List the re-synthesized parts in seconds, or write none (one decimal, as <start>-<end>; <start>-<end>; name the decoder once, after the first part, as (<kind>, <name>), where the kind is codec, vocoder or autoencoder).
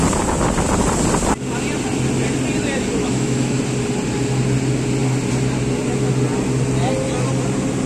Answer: 3.0-3.6 (autoencoder, DAC-VAE)